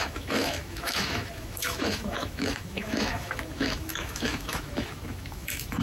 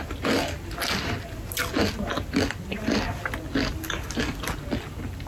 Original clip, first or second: second